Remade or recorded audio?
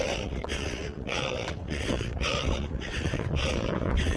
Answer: remade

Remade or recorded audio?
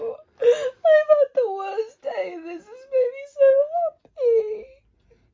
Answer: recorded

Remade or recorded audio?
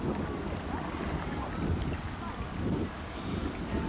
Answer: recorded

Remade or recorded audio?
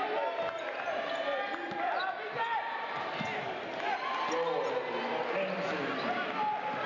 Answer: recorded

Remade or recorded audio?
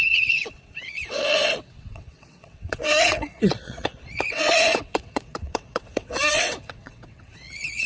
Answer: remade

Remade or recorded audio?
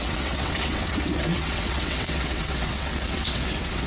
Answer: remade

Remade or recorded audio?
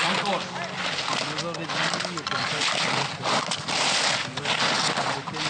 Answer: recorded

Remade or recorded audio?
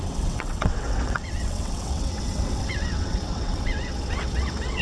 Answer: remade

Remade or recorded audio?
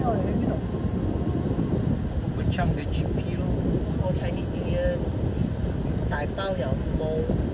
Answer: recorded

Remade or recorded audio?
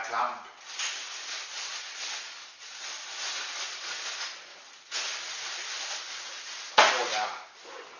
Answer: recorded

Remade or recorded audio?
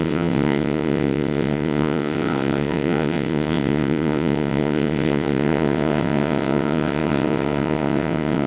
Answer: remade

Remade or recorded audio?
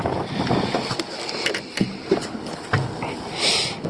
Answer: recorded